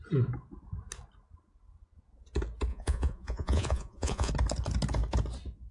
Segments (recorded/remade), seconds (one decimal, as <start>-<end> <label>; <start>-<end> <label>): 0.0-2.7 recorded; 2.7-4.3 remade; 4.3-5.7 recorded

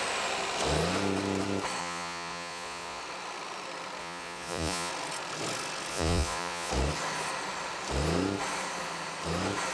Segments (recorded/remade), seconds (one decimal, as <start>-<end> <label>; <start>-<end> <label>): 0.0-1.8 recorded; 1.8-3.0 remade; 3.0-4.0 recorded; 4.0-4.9 remade; 4.9-5.9 recorded; 5.9-6.7 remade; 6.7-9.7 recorded

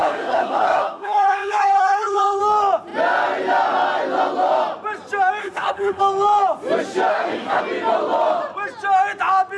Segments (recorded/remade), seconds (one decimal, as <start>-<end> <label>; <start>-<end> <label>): 0.0-2.4 remade; 2.4-5.4 recorded; 5.4-6.0 remade; 6.0-7.1 recorded; 7.1-7.6 remade; 7.6-9.6 recorded

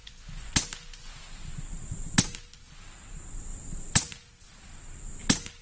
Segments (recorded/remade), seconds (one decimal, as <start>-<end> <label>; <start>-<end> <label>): 0.0-0.5 remade; 0.5-5.6 recorded

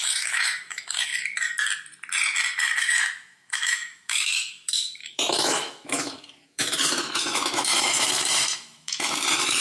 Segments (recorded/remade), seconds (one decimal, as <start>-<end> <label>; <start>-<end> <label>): 0.0-1.1 remade; 1.1-2.8 recorded; 2.8-9.6 remade

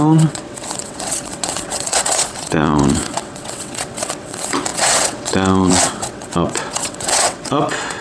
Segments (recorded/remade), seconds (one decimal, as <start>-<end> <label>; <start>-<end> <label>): 0.0-8.0 remade

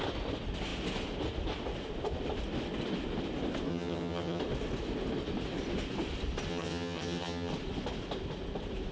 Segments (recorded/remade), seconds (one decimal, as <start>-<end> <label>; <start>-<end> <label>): 0.0-3.7 recorded; 3.7-4.4 remade; 4.4-6.5 recorded; 6.5-7.5 remade; 7.5-8.9 recorded